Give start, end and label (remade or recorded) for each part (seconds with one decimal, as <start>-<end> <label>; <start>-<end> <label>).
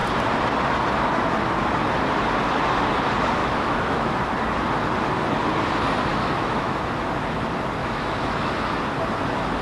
0.0-3.4 recorded; 3.4-4.1 remade; 4.1-6.1 recorded; 6.1-6.8 remade; 6.8-7.8 recorded; 7.8-8.5 remade; 8.5-9.6 recorded